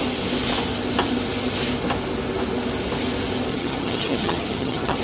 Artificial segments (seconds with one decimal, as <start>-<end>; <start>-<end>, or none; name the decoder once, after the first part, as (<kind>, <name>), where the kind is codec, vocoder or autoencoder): 3.5-5.0 (vocoder, HiFi-GAN)